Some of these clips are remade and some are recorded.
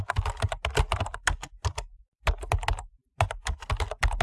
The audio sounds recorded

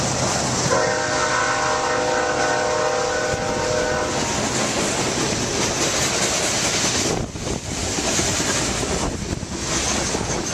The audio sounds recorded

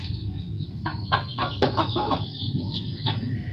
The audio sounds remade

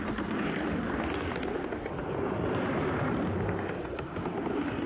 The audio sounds recorded